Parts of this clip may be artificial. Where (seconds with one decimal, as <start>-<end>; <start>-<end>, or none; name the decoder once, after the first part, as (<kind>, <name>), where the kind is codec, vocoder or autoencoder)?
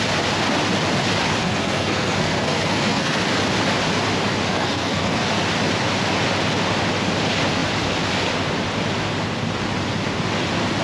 1.4-3.2 (codec, SNAC); 4.5-5.3